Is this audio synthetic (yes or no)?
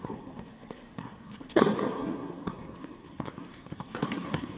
yes